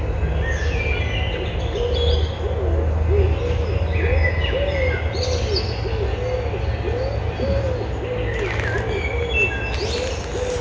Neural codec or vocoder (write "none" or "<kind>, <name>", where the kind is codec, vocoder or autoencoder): none